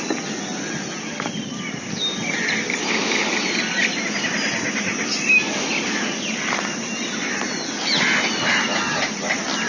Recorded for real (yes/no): yes